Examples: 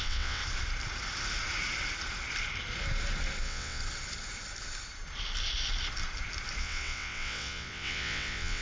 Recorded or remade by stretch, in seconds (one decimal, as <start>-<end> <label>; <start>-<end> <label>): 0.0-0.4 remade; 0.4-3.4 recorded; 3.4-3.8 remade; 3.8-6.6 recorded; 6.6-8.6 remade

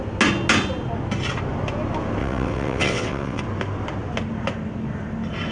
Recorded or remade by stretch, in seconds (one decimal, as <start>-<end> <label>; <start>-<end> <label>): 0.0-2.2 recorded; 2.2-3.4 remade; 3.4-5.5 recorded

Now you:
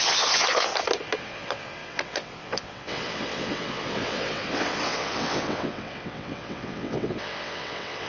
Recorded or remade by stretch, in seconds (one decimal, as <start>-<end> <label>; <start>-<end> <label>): 0.0-0.7 remade; 0.7-1.2 recorded; 1.2-8.1 remade

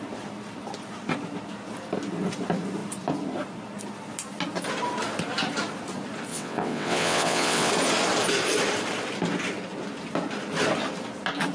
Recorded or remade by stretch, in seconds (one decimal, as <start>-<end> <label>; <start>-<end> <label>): 0.0-6.3 recorded; 6.3-7.7 remade; 7.7-11.5 recorded

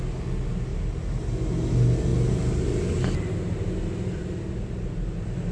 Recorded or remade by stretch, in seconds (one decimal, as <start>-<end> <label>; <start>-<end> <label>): 0.0-5.5 recorded

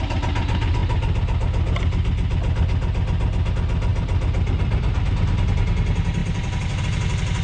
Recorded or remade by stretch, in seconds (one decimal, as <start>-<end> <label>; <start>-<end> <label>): 0.0-7.4 recorded